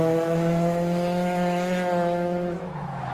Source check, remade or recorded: remade